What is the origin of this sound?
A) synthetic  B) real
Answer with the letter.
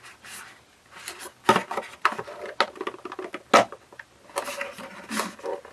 B